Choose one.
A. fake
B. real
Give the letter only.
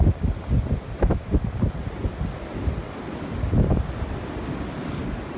B